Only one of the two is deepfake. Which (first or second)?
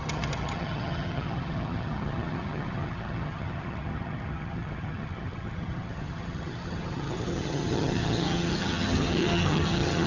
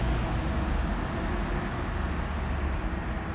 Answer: first